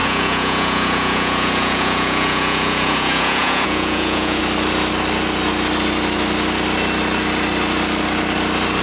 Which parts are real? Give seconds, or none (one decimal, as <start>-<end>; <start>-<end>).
4.4-8.8

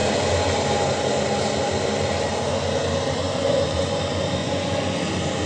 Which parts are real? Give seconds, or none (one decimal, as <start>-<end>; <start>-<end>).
0.0-3.2; 4.0-4.4; 5.0-5.5